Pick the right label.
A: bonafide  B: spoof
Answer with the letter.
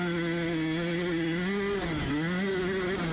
A